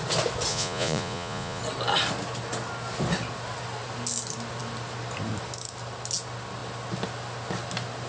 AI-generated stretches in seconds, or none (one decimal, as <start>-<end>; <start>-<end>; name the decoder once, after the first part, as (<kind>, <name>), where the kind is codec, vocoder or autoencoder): 0.5-1.6 (vocoder, Vocos)